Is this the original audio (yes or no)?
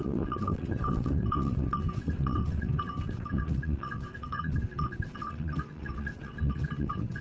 no